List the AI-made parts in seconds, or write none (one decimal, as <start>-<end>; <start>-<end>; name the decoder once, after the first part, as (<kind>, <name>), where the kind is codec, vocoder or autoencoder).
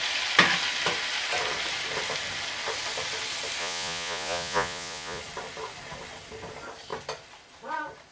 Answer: 3.6-5.2 (vocoder, Vocos)